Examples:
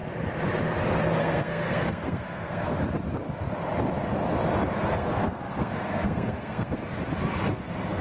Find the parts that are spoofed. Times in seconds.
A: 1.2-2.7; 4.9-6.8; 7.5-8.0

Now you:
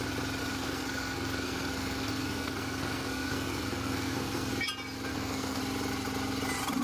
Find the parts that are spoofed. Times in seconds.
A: 0.4-4.5; 5.1-5.6

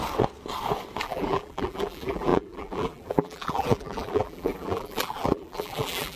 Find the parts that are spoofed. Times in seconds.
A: 1.0-6.2

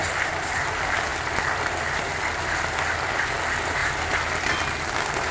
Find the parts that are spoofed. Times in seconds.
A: 0.0-0.6; 1.1-2.2

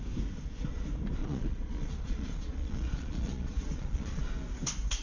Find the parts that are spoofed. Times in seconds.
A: 1.2-4.2

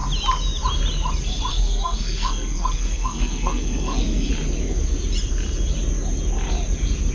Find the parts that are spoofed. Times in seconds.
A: 1.5-4.3

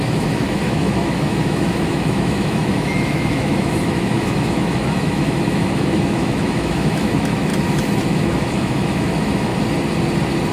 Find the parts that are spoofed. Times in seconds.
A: 0.0-7.5; 8.1-9.5

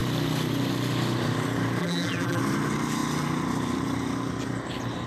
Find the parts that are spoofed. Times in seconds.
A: 1.8-2.4